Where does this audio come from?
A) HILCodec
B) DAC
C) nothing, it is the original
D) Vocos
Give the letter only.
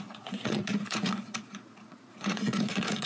D